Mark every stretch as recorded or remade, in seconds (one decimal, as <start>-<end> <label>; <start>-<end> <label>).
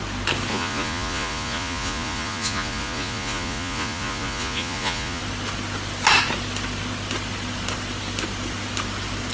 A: 0.0-0.5 recorded; 0.5-5.2 remade; 5.2-9.3 recorded